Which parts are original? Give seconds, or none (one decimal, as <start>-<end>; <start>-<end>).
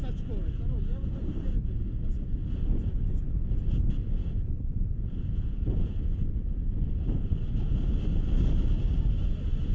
0.0-2.4; 7.3-9.7